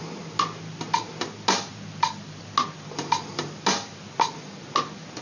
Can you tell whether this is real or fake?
real